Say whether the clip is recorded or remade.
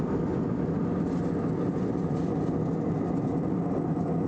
recorded